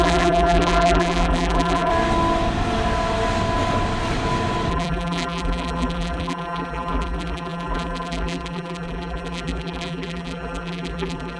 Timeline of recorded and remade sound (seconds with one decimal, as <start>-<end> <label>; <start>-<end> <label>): 0.0-1.9 remade; 1.9-4.7 recorded; 4.7-11.4 remade